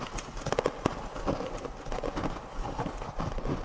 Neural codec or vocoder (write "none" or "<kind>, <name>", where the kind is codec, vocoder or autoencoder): none